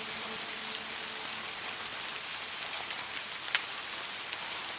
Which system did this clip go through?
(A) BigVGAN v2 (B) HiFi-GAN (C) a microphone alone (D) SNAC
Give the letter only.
C